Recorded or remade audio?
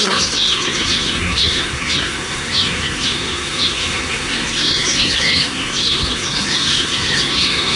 remade